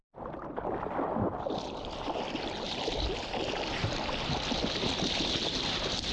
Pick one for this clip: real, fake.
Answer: real